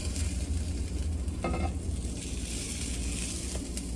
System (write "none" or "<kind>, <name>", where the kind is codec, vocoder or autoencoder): none